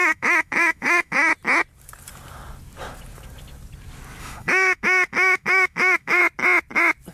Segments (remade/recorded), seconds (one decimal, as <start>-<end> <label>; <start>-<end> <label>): 0.0-1.3 remade; 1.3-4.2 recorded; 4.2-6.2 remade; 6.2-7.1 recorded